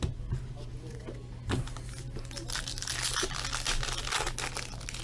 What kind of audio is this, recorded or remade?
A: recorded